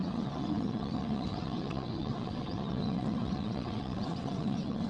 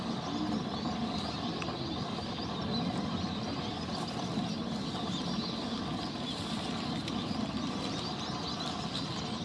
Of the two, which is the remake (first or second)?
first